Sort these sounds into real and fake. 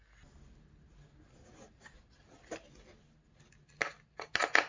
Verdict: real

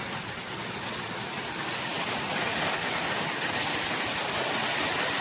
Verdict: real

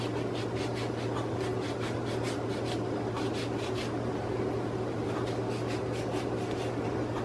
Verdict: real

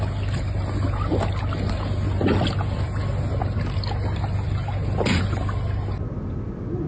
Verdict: real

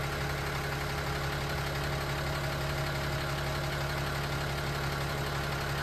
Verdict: real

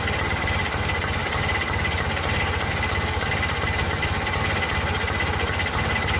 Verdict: real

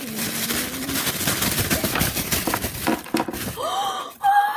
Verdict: fake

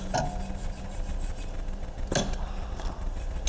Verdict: real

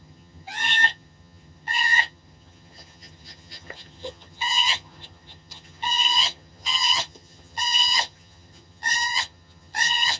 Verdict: fake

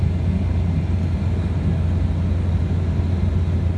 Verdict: real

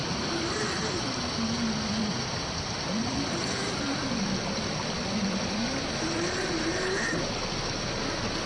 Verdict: real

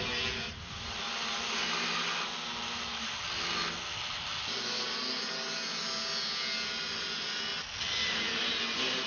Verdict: real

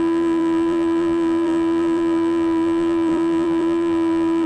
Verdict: fake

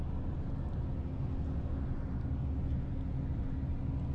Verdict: real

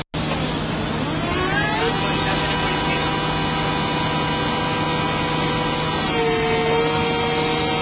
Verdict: real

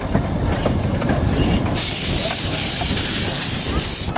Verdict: real